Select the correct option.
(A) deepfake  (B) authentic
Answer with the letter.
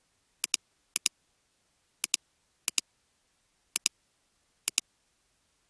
B